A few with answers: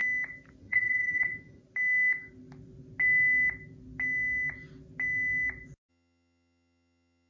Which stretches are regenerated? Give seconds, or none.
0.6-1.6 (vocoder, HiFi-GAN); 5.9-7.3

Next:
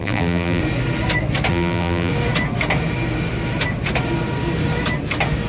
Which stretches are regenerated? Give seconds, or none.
0.0-0.6 (vocoder, BigVGAN v2); 1.5-2.1